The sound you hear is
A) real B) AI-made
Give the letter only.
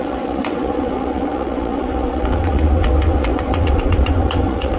B